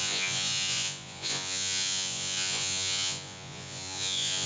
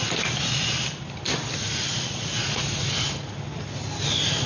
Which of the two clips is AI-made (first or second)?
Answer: first